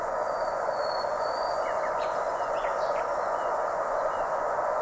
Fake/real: fake